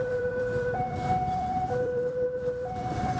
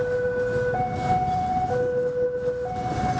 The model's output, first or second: first